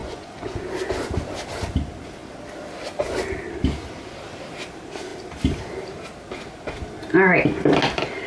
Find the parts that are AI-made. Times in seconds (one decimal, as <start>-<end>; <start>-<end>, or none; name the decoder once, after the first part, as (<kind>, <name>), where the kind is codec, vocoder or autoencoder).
0.0-0.6 (vocoder, Vocos)